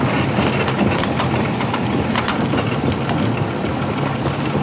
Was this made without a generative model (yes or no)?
yes